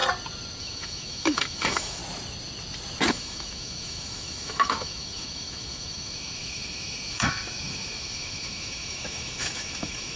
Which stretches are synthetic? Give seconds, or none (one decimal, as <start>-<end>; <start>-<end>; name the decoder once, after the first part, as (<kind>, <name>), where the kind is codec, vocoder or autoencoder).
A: 0.6-2.0 (autoencoder, DAC-VAE); 3.1-10.2